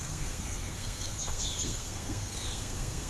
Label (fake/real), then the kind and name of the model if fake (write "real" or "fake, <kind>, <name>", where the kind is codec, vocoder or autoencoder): fake, codec, SNAC